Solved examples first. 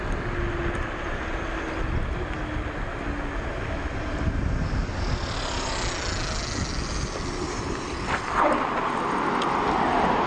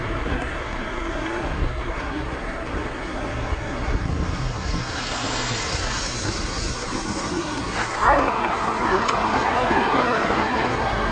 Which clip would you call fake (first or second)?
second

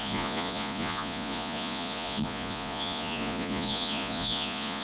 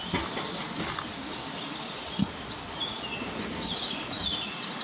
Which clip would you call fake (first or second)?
first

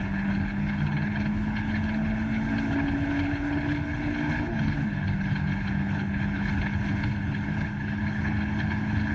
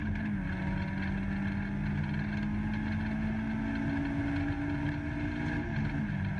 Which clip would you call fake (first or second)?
first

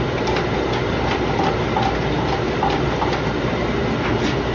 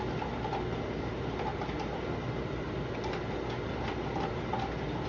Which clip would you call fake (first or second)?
first